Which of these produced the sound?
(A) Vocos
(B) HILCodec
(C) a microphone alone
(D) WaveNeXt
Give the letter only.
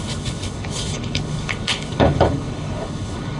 B